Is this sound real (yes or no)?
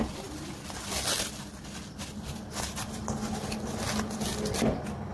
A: yes